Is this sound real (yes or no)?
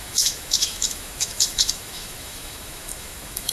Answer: no